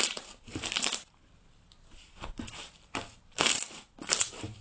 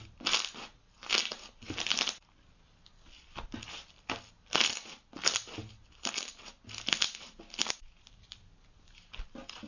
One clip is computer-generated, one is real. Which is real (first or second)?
second